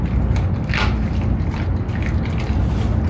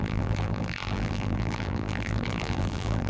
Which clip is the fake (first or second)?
second